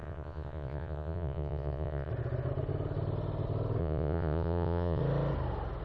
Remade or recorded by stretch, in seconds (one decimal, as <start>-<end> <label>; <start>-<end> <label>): 0.0-2.1 remade; 2.1-3.8 recorded; 3.8-5.0 remade; 5.0-5.8 recorded